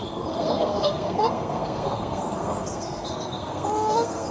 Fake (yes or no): yes